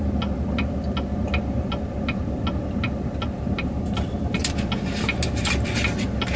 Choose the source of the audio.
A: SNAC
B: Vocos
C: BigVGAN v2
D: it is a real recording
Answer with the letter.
D